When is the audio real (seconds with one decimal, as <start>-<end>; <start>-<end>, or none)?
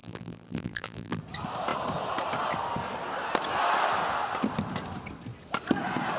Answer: 1.2-6.2